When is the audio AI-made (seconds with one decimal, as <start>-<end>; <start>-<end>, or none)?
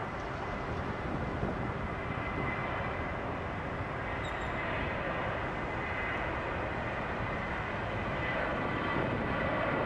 none